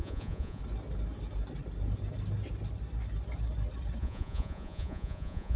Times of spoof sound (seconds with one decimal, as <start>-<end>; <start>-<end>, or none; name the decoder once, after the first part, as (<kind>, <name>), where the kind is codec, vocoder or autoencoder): 0.0-0.6 (vocoder, Vocos); 4.0-5.6